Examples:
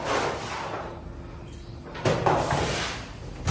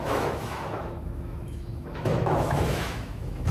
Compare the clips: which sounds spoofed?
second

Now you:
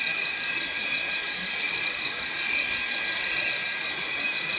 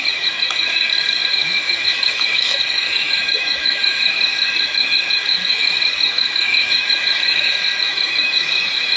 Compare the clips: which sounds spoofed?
second